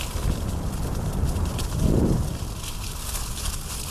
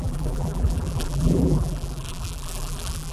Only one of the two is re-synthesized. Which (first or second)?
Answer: second